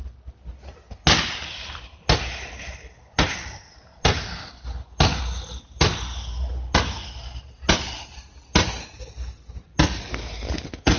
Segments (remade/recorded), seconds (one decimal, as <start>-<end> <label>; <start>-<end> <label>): 0.0-11.0 recorded